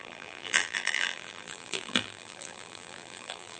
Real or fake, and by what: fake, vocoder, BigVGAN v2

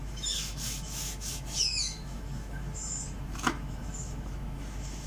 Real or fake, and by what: fake, autoencoder, DAC-VAE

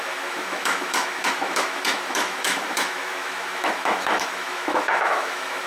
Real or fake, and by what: fake, autoencoder, DAC-VAE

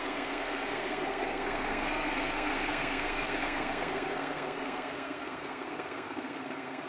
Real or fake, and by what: fake, codec, SNAC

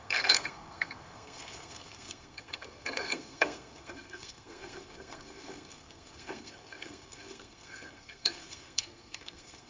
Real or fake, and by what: fake, codec, SNAC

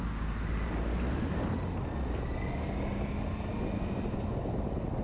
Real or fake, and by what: real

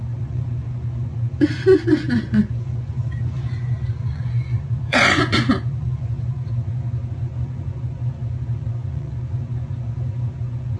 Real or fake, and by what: fake, vocoder, Vocos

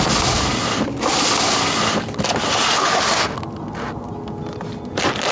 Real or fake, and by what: real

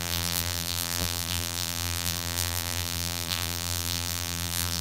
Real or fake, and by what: fake, vocoder, BigVGAN v2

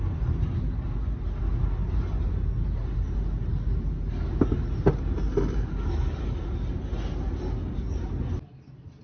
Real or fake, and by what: real